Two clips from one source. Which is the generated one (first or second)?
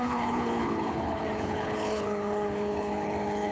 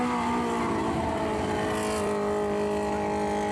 first